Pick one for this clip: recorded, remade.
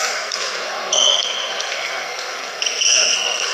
remade